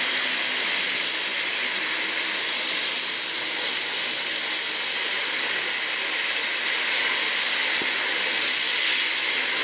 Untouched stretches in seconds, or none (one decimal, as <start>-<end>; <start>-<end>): 0.0-9.6

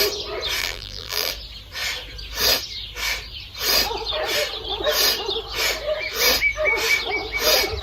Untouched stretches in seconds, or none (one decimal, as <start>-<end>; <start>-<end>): 0.0-0.6; 1.3-7.8

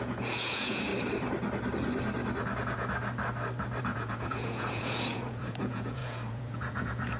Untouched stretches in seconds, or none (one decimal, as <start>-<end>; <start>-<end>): 0.9-3.8

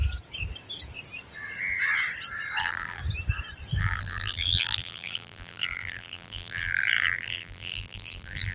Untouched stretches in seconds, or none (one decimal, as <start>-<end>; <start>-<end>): 0.0-2.6; 3.0-3.8

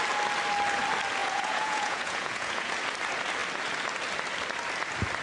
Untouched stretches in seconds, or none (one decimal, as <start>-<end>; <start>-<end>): 0.0-1.2; 2.7-5.2